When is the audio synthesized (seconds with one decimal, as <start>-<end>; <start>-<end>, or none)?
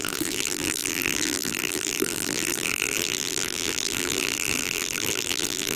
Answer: 0.0-5.8